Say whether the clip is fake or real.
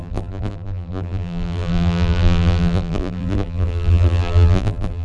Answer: fake